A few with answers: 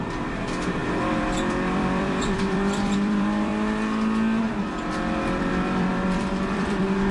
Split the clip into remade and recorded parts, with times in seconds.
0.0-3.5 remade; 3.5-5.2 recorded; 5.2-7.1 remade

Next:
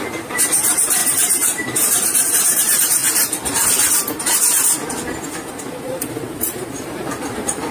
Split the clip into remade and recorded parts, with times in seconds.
0.0-3.0 remade; 3.0-5.8 recorded; 5.8-7.7 remade

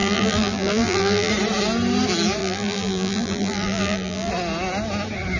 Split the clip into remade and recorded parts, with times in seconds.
0.0-1.3 remade; 1.3-2.4 recorded; 2.4-4.3 remade; 4.3-5.4 recorded

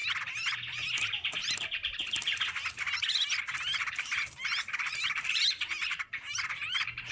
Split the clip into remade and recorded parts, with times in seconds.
0.0-3.8 recorded; 3.8-7.1 remade

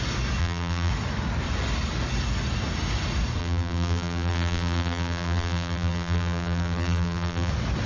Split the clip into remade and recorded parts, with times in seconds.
0.0-0.4 recorded; 0.4-0.9 remade; 0.9-3.4 recorded; 3.4-7.5 remade; 7.5-7.9 recorded

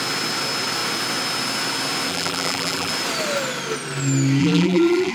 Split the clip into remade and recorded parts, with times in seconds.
0.0-2.1 recorded; 2.1-2.9 remade; 2.9-4.4 recorded; 4.4-5.1 remade

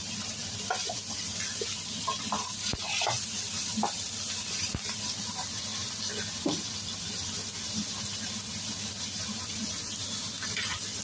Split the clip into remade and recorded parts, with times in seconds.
0.0-11.0 recorded